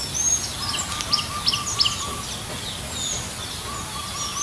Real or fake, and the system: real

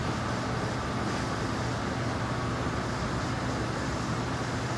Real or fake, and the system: real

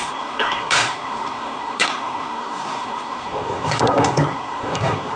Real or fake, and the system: fake, codec, SNAC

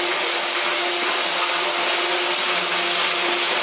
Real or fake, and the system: real